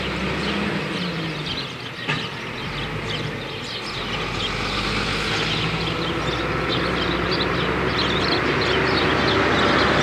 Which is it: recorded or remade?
recorded